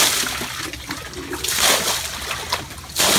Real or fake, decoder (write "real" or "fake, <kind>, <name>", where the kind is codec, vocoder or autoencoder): real